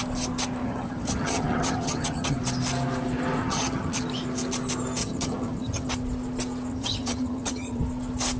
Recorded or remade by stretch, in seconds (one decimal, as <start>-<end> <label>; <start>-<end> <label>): 0.0-0.6 recorded; 0.6-2.4 remade; 2.4-3.4 recorded; 3.4-4.0 remade; 4.0-5.0 recorded; 5.0-5.9 remade; 5.9-6.7 recorded; 6.7-7.8 remade; 7.8-8.4 recorded

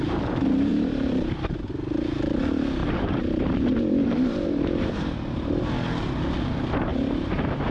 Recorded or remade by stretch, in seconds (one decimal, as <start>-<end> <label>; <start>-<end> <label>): 0.0-0.7 recorded; 0.7-1.6 remade; 1.6-2.8 recorded; 2.8-5.6 remade; 5.6-6.9 recorded; 6.9-7.7 remade

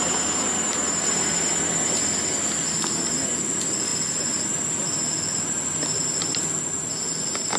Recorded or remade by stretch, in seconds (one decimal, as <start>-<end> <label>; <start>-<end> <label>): 0.0-7.6 recorded

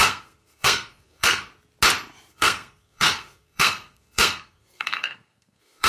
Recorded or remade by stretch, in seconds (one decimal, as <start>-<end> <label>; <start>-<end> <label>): 0.0-1.5 remade; 1.5-2.3 recorded; 2.3-5.9 remade

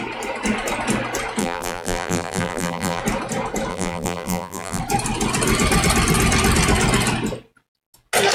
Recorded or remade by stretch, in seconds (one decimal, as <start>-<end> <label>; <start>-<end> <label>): 0.0-1.4 recorded; 1.4-3.0 remade; 3.0-3.7 recorded; 3.7-4.8 remade; 4.8-8.3 recorded

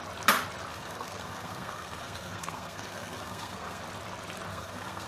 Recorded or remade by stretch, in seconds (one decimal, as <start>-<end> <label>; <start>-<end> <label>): 0.0-0.7 recorded; 0.7-3.8 remade; 3.8-4.5 recorded; 4.5-5.1 remade

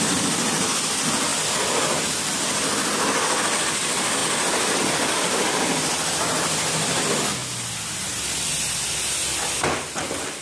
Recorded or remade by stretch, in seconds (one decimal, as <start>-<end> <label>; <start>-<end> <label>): 0.0-10.4 recorded